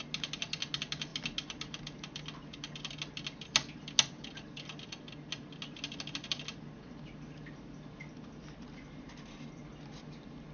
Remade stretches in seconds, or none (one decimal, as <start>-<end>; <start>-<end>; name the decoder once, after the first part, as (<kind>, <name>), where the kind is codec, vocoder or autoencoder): none